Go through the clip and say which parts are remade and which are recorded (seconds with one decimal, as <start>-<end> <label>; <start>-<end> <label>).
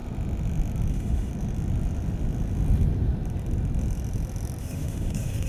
0.0-0.9 recorded; 0.9-1.3 remade; 1.3-4.6 recorded; 4.6-5.5 remade